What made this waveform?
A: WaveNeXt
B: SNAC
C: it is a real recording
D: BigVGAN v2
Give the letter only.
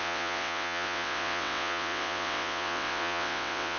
A